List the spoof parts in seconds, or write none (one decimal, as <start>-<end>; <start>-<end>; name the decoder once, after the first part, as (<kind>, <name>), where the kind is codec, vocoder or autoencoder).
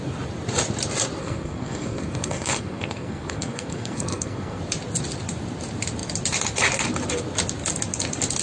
1.2-4.6 (codec, SNAC)